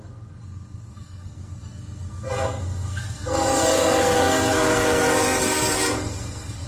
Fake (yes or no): yes